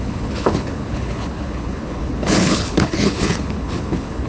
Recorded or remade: remade